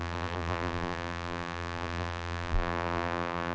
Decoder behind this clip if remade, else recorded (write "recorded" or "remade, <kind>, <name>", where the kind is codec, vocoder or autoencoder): remade, vocoder, BigVGAN v2